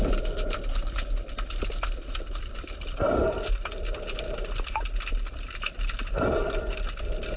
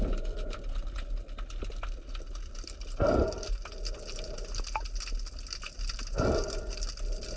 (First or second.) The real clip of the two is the second